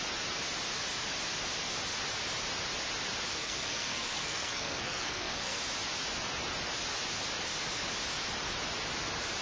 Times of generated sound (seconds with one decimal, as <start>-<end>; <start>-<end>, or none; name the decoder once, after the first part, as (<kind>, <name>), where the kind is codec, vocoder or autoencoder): 3.3-5.6 (codec, SNAC)